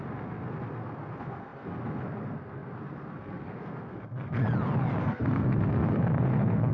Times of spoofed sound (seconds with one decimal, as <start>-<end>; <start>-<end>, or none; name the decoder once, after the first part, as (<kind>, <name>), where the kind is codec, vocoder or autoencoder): 0.0-4.4 (codec, SNAC); 5.0-6.7